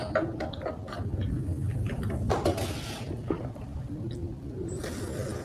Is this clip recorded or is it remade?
remade